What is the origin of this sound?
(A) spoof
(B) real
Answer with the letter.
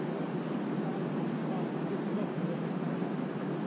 B